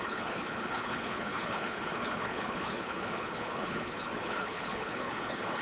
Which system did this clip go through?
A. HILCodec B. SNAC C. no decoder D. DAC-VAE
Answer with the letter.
A